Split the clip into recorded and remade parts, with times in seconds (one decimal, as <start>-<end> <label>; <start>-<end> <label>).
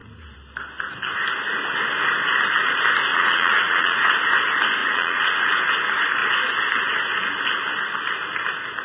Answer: 0.0-3.1 recorded; 3.1-4.1 remade; 4.1-4.8 recorded; 4.8-5.6 remade; 5.6-8.8 recorded